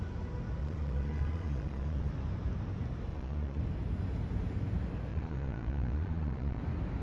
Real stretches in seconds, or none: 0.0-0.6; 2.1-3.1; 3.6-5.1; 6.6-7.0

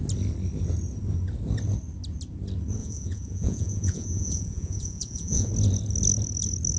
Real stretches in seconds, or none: 0.0-2.8; 5.5-6.8

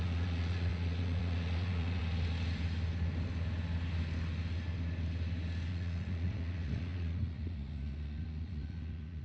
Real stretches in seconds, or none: 2.0-5.7